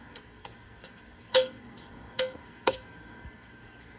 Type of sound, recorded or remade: remade